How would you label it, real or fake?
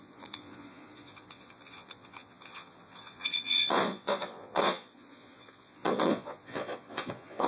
fake